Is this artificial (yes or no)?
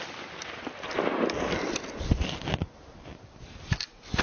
no